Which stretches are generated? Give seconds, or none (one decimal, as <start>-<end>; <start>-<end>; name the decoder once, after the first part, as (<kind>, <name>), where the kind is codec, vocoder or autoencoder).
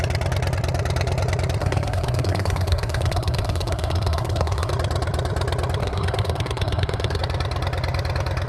1.6-4.7 (codec, SNAC); 5.8-7.2